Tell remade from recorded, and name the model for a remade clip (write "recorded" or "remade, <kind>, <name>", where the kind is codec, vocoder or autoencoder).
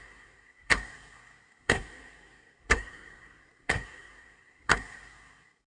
remade, codec, SNAC